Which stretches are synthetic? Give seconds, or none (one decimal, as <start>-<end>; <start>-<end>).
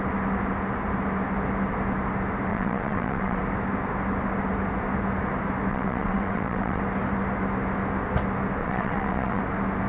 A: 2.5-3.4; 5.7-6.8; 8.6-9.4